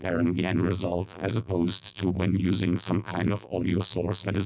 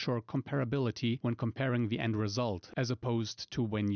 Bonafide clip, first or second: second